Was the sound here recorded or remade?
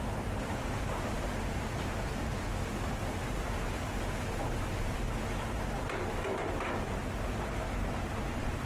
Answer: recorded